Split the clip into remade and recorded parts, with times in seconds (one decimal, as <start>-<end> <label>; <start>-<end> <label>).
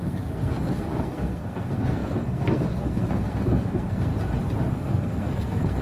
0.0-4.1 remade; 4.1-4.7 recorded; 4.7-5.8 remade